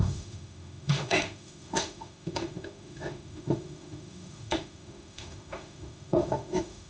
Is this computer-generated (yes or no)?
yes